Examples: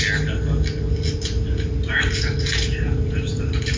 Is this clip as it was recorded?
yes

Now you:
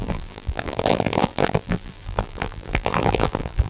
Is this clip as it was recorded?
no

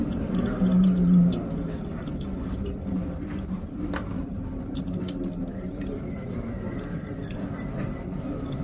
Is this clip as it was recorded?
no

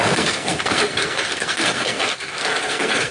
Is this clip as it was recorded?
no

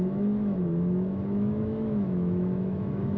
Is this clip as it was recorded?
no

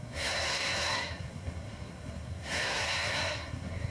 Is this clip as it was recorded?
no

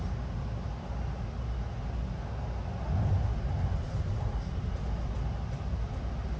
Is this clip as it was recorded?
yes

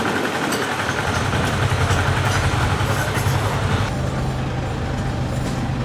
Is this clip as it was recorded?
yes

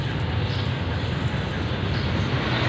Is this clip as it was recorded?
yes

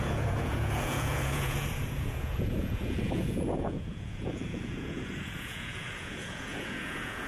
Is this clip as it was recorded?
no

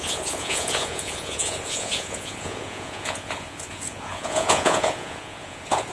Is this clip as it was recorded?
no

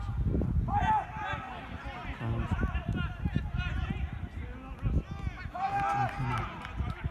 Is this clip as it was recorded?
yes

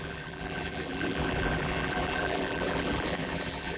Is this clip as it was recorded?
no